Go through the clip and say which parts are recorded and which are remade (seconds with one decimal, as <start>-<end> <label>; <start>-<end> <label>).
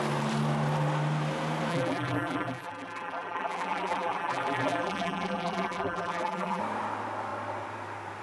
0.0-1.7 recorded; 1.7-6.6 remade; 6.6-8.2 recorded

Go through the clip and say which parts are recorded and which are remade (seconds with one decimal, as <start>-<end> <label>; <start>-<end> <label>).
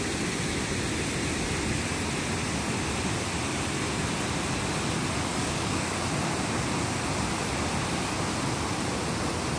0.0-5.3 recorded; 5.3-6.0 remade; 6.0-9.6 recorded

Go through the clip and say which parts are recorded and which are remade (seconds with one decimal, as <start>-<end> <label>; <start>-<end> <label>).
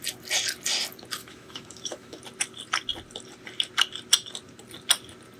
0.0-1.2 recorded; 1.2-2.2 remade; 2.2-5.4 recorded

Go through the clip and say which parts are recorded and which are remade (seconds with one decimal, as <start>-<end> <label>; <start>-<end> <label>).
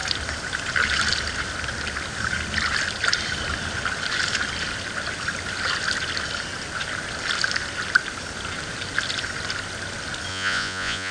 0.0-10.3 recorded; 10.3-11.1 remade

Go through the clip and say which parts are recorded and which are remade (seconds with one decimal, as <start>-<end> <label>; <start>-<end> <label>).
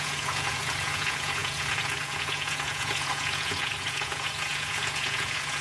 0.0-5.6 remade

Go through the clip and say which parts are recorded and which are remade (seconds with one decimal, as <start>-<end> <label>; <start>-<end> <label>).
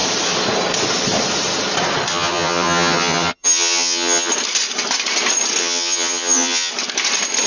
0.0-2.1 recorded; 2.1-4.3 remade; 4.3-5.6 recorded; 5.6-6.7 remade; 6.7-7.5 recorded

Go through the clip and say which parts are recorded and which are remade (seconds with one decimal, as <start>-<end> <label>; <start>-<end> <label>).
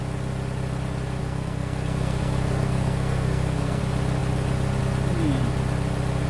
0.0-1.2 recorded; 1.2-3.8 remade; 3.8-6.3 recorded